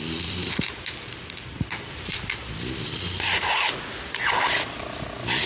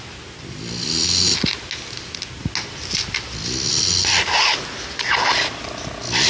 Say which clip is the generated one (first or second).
first